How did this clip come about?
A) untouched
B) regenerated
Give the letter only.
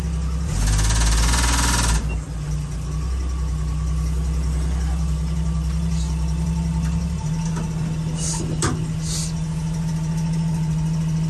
A